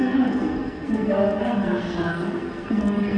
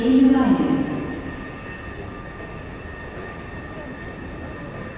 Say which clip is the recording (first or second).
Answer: second